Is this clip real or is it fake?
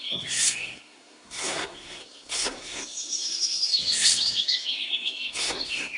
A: fake